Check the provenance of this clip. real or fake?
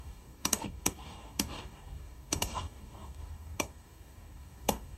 fake